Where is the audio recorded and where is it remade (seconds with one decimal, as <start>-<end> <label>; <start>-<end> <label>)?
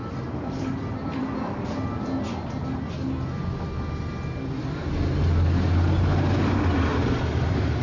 0.0-1.2 remade; 1.2-6.9 recorded; 6.9-7.8 remade